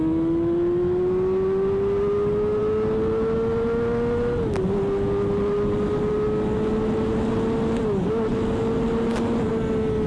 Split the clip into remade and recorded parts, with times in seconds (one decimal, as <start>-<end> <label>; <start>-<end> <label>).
0.0-10.1 recorded